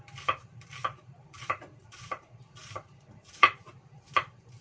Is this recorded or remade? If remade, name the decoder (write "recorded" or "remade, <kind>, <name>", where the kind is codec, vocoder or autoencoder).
remade, vocoder, BigVGAN v2